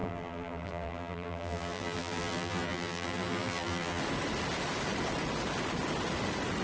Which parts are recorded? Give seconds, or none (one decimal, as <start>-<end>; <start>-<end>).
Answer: 4.0-6.6